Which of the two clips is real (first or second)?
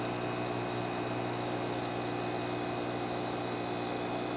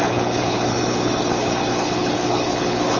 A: first